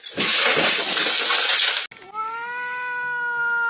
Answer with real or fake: real